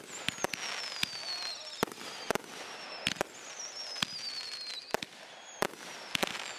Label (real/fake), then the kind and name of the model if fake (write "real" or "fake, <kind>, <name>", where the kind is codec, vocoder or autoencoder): real